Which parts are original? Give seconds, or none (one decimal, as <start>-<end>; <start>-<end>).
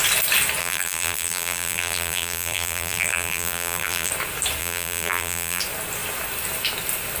0.0-0.6; 4.1-4.6; 5.6-7.2